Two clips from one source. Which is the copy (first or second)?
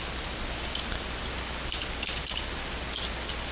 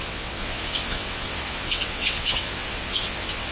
second